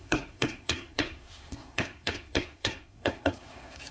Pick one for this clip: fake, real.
fake